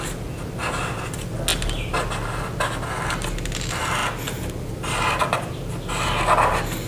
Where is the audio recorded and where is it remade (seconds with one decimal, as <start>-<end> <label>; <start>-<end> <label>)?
0.0-6.9 recorded